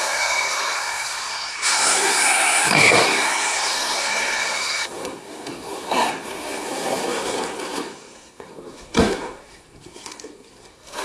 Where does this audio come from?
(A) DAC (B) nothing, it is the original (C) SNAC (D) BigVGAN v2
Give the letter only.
C